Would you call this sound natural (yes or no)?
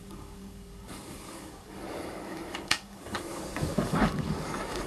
no